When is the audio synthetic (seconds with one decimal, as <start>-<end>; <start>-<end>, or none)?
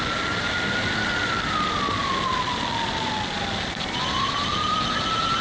0.0-5.4